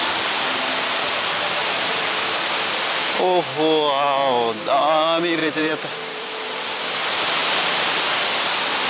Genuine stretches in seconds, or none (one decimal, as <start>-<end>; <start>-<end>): 0.0-1.6; 2.6-5.4; 6.8-7.4; 8.0-8.9